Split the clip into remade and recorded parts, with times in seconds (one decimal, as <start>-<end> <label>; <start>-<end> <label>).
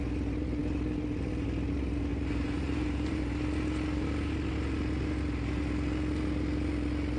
0.0-2.1 recorded; 2.1-3.2 remade; 3.2-7.2 recorded